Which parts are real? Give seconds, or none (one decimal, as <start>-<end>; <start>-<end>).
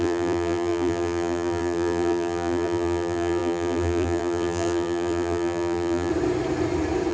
6.1-7.1